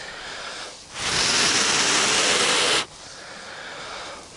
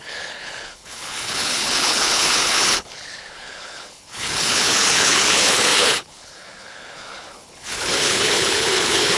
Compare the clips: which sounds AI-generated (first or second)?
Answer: second